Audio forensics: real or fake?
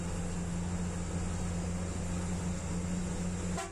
real